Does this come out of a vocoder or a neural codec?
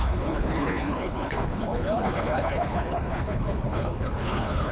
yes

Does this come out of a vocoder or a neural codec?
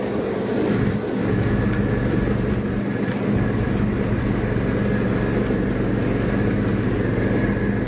no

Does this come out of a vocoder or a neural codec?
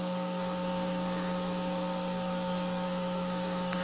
yes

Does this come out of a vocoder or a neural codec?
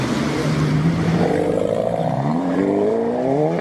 yes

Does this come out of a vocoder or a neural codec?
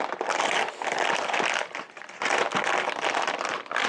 no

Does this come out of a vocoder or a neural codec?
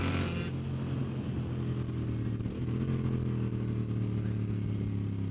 no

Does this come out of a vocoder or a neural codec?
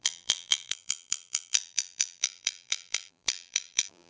yes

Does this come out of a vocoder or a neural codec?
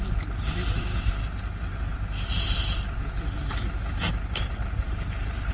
yes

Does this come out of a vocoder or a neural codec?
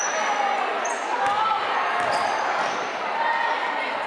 no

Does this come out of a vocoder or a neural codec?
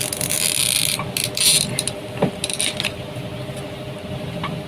yes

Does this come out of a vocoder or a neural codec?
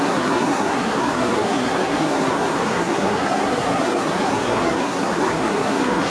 yes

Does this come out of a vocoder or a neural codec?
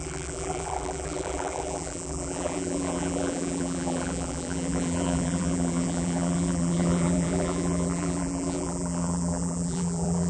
yes